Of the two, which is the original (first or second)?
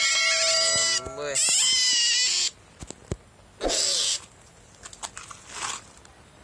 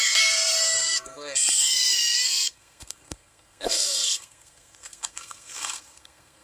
first